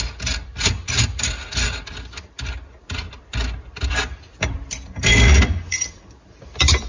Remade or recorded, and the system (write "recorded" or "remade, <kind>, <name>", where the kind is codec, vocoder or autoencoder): recorded